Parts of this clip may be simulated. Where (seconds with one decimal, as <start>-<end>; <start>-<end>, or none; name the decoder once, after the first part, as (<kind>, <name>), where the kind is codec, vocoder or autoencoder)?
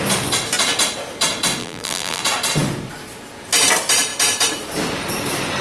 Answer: 1.6-2.2 (vocoder, BigVGAN v2)